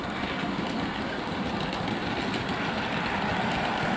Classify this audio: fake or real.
real